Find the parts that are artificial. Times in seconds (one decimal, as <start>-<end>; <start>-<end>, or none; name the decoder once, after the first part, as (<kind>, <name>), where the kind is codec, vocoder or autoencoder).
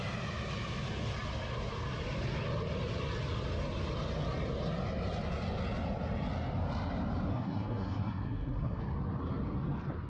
7.3-8.8 (codec, SNAC)